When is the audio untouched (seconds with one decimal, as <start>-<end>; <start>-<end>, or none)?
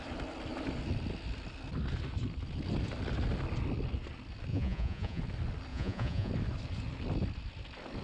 0.0-4.5; 5.2-5.7; 6.3-8.0